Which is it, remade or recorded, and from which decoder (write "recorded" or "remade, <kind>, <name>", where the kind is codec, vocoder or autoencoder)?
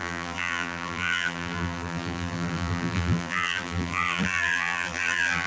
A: remade, vocoder, BigVGAN v2